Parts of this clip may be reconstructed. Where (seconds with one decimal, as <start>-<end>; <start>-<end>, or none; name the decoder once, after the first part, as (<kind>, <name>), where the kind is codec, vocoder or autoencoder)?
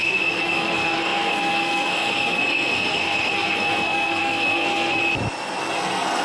0.0-5.0 (codec, SNAC); 5.6-6.2